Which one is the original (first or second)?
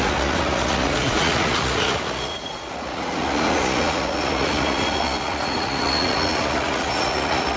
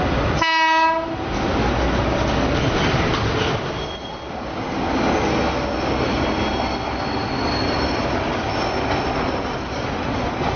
second